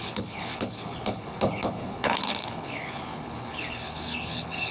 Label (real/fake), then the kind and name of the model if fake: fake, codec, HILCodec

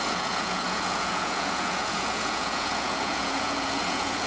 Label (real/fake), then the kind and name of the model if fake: fake, vocoder, Vocos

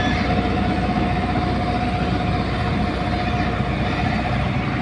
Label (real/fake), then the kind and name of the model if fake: real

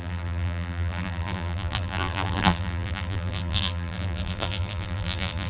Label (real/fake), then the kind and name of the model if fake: fake, vocoder, BigVGAN v2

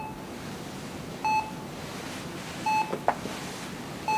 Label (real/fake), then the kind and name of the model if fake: real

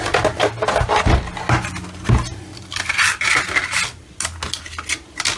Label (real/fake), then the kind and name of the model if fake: real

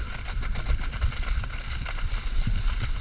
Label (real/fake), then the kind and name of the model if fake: real